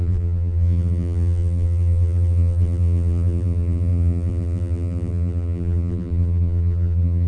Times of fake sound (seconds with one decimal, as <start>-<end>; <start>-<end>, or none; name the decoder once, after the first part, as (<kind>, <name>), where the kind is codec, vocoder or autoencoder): 0.0-7.3 (vocoder, BigVGAN v2)